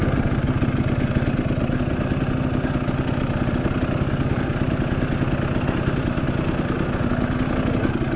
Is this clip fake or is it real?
real